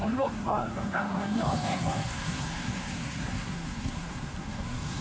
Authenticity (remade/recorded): remade